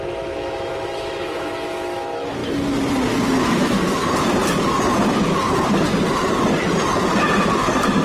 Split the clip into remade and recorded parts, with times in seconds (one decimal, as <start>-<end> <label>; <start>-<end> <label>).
0.0-2.4 remade; 2.4-3.4 recorded; 3.4-4.0 remade; 4.0-8.0 recorded